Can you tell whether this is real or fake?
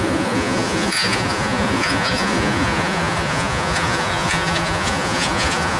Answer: fake